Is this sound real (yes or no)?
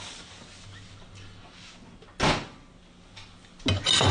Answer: yes